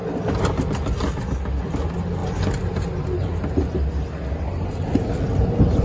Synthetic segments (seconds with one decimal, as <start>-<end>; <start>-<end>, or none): none